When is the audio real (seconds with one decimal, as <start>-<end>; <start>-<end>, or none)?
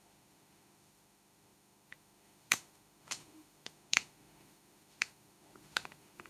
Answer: none